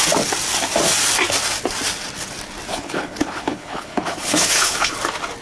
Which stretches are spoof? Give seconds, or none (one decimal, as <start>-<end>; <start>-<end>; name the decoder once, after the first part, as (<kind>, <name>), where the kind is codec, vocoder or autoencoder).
2.7-4.9 (codec, HILCodec)

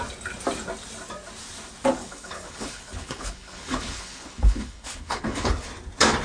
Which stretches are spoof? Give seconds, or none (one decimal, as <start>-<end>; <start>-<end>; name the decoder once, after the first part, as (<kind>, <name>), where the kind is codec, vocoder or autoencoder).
2.0-5.7 (codec, HILCodec)

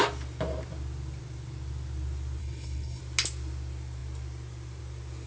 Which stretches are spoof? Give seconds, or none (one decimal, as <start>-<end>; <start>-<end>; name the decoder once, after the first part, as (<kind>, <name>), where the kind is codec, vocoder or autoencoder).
2.4-3.0 (codec, HILCodec)

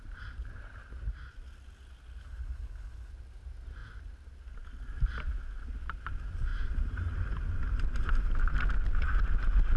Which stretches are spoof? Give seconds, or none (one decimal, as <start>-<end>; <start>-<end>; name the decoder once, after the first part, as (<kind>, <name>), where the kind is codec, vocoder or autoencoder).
2.2-3.1 (codec, HILCodec)